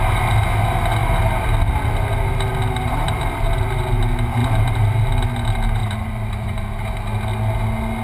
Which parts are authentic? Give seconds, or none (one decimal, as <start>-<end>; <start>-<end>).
0.0-4.4; 5.1-5.8; 6.8-8.0